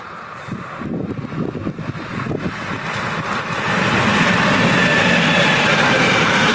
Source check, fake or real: real